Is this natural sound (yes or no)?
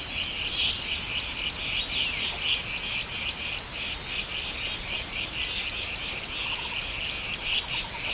yes